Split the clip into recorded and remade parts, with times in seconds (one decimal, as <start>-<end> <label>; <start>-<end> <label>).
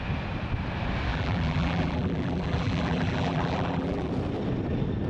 0.0-1.1 recorded; 1.1-4.1 remade; 4.1-5.1 recorded